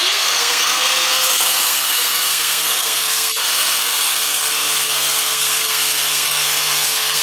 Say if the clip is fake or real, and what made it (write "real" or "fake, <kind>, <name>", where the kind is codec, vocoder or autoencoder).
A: fake, codec, SNAC